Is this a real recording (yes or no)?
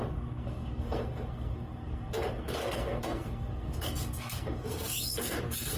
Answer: no